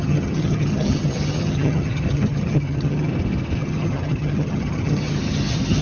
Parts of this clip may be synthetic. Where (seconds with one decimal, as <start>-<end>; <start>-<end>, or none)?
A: 0.0-3.1; 3.6-5.8